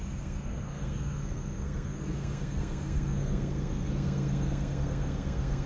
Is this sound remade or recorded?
remade